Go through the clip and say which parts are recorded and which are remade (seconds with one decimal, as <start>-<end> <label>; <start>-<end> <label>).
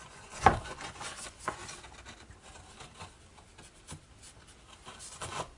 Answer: 0.0-1.6 remade; 1.6-5.0 recorded; 5.0-5.6 remade